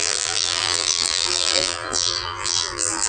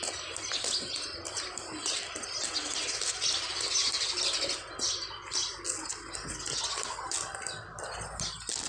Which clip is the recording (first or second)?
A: second